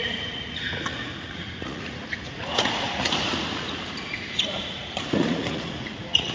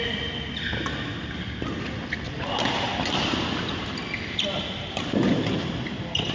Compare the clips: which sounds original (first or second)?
second